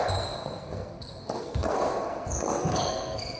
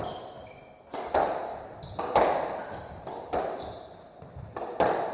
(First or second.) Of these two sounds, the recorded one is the second